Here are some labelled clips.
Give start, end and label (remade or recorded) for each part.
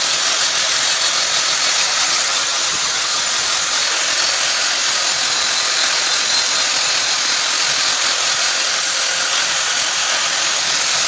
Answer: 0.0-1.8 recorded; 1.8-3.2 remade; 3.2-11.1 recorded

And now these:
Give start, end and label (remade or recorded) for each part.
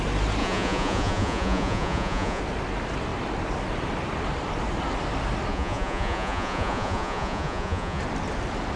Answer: 0.0-0.4 recorded; 0.4-2.4 remade; 2.4-5.5 recorded; 5.5-8.0 remade; 8.0-8.8 recorded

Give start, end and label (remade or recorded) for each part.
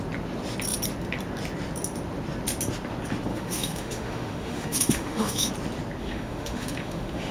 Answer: 0.0-3.3 recorded; 3.3-5.5 remade; 5.5-6.0 recorded; 6.0-7.3 remade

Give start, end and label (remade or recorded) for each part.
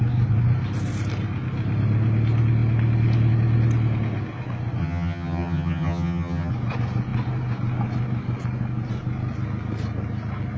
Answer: 0.0-4.8 recorded; 4.8-6.5 remade; 6.5-10.6 recorded